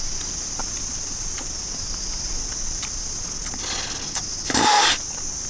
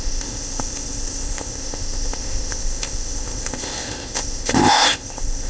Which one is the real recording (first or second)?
first